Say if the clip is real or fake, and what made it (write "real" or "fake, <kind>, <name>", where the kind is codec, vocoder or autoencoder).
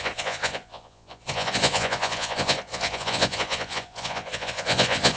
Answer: fake, vocoder, Vocos